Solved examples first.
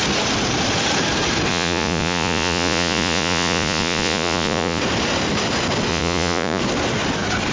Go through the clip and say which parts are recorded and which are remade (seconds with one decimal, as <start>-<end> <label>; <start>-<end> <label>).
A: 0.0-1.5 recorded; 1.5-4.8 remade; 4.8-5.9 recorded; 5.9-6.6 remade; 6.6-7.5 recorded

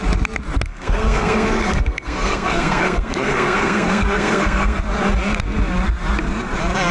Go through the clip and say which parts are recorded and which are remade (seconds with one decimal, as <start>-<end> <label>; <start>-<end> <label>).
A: 0.0-0.7 recorded; 0.7-4.8 remade; 4.8-6.9 recorded

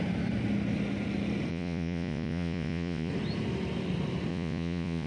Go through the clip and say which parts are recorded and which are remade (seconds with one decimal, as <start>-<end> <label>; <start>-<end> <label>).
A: 0.0-1.5 recorded; 1.5-3.1 remade; 3.1-4.3 recorded; 4.3-5.1 remade